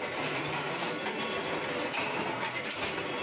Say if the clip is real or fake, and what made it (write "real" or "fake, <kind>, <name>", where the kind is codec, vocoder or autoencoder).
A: real